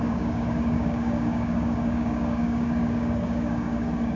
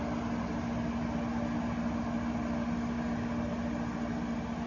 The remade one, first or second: first